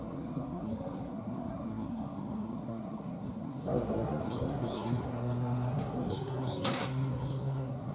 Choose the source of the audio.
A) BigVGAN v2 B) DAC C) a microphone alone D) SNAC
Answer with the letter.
D